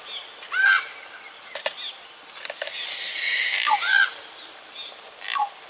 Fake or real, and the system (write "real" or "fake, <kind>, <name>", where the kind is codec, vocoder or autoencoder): real